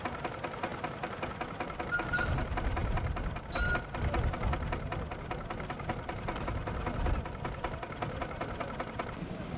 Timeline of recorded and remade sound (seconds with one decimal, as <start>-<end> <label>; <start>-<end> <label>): 0.0-9.6 recorded